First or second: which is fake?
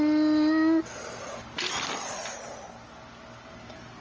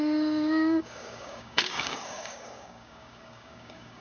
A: second